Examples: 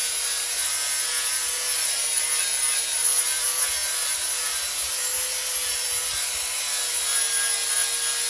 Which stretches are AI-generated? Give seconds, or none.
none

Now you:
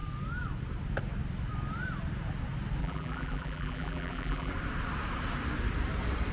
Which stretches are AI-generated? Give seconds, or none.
2.8-4.5 (vocoder, BigVGAN v2)

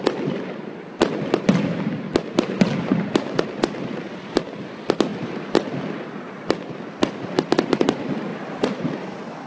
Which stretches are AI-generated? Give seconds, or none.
8.3-8.9 (vocoder, BigVGAN v2)

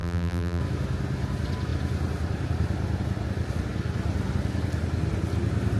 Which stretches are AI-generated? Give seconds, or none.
0.0-0.6 (vocoder, BigVGAN v2)